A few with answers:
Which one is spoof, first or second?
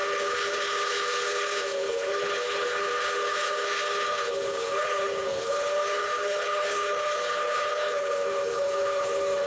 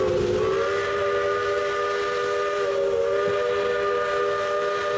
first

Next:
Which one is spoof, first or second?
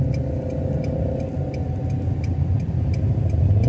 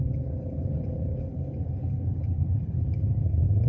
second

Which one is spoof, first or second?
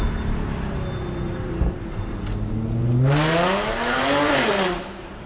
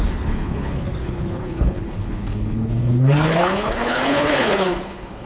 second